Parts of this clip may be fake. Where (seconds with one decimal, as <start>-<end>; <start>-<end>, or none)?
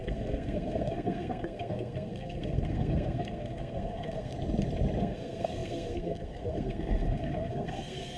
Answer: 0.0-4.3; 5.0-8.2